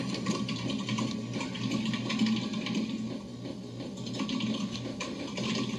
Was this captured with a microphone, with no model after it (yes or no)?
yes